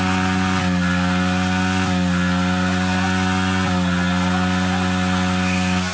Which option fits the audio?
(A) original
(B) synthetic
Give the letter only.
A